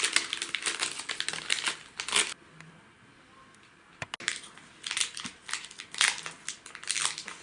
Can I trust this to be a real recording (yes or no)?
yes